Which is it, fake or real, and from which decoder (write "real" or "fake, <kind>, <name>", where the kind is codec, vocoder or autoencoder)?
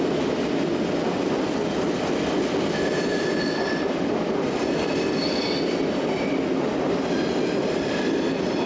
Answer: real